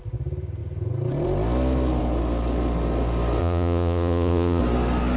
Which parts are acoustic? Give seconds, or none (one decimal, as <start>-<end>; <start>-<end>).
0.0-3.4; 4.6-5.2